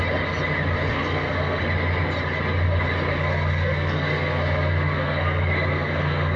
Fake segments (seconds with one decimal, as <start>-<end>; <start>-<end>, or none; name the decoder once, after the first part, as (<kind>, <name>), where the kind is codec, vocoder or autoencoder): 0.9-1.6 (codec, SNAC); 3.1-6.4